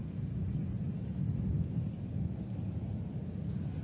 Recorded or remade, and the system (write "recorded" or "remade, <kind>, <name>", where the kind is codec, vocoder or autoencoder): recorded